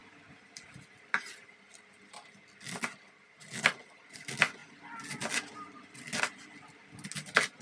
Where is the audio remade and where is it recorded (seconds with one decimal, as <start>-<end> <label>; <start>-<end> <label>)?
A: 0.0-7.6 recorded